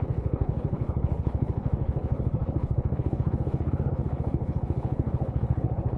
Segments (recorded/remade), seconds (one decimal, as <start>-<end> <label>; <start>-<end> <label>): 0.0-6.0 remade